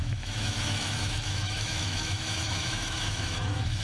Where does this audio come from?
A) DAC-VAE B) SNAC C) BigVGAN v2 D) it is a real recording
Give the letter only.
A